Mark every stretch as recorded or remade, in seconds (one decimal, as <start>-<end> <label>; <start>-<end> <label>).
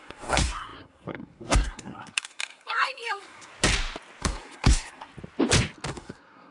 0.0-3.5 remade; 3.5-4.2 recorded; 4.2-5.1 remade; 5.1-5.9 recorded; 5.9-6.5 remade